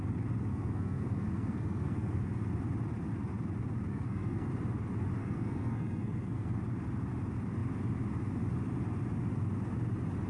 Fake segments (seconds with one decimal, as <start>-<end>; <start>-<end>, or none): 0.5-2.5; 3.9-4.5; 5.2-6.6